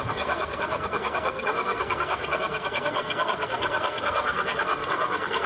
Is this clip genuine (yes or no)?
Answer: no